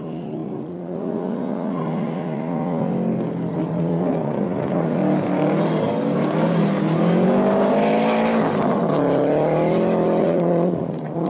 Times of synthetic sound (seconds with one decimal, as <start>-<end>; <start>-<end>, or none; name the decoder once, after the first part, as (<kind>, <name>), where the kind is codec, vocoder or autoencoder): 0.0-2.9 (vocoder, Vocos); 3.5-5.0; 10.2-11.3